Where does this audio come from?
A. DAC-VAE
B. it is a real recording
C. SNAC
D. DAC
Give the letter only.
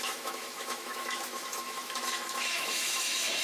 A